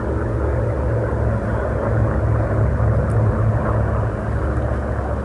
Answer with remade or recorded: recorded